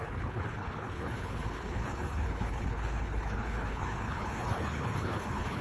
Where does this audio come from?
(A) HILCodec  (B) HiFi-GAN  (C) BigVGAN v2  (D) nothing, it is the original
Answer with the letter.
A